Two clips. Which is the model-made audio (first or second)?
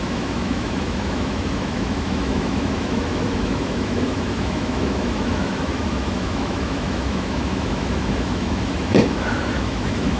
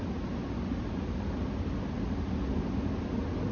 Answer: first